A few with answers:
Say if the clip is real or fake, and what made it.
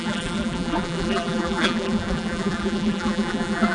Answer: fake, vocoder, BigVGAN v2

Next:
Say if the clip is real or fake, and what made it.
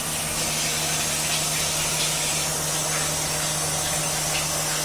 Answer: real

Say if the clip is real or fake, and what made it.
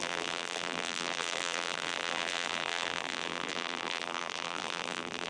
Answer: fake, vocoder, BigVGAN v2